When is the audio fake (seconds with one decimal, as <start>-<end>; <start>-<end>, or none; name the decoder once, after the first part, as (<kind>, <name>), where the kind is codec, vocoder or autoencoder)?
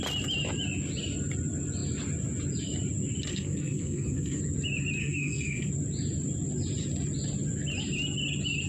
3.3-4.4 (codec, SNAC); 5.0-5.7